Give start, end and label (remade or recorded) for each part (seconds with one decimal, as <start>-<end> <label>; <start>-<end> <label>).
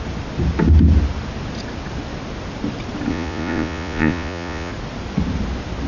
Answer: 0.0-3.1 recorded; 3.1-4.7 remade; 4.7-5.9 recorded